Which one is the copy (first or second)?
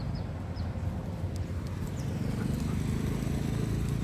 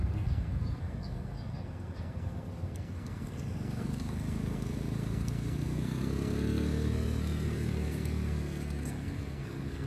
second